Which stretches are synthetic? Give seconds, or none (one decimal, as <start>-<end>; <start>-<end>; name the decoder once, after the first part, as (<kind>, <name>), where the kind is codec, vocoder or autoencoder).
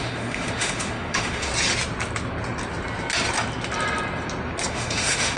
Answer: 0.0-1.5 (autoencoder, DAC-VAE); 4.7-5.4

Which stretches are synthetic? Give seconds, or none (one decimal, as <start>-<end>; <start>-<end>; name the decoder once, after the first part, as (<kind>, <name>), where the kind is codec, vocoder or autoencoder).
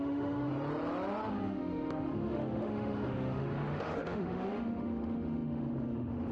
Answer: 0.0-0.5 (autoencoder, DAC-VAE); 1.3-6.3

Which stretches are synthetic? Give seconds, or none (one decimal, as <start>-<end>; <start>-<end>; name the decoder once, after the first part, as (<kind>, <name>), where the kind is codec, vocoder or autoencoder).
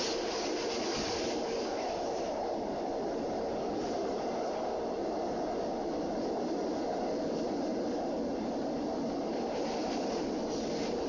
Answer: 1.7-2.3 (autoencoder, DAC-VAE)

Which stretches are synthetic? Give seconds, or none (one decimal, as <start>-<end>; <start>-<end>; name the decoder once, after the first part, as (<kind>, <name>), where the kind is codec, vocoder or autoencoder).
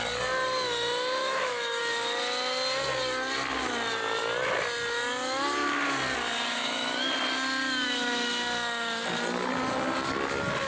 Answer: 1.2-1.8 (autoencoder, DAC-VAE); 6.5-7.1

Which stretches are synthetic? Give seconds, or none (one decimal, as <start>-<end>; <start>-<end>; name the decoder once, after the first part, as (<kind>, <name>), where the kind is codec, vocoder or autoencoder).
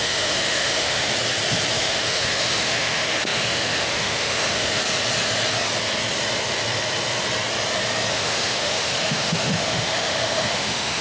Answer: 0.0-1.1 (autoencoder, DAC-VAE); 1.7-4.8; 8.1-11.0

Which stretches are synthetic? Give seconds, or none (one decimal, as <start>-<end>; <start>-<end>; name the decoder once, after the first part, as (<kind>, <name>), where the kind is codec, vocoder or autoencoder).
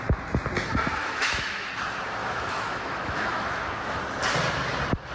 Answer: 1.0-1.7 (autoencoder, DAC-VAE); 2.2-4.0